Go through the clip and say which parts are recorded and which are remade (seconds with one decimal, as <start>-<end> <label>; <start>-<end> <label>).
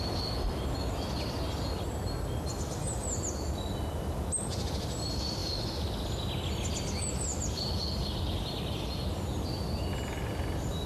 0.0-10.9 recorded